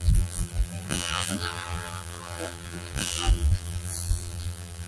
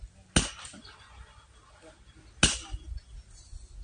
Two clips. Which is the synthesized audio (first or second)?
first